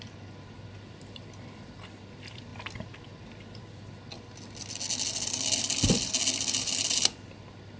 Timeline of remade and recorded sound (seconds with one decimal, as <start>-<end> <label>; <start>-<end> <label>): 0.0-7.8 recorded